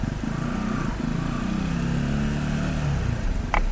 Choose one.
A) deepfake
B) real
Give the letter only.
B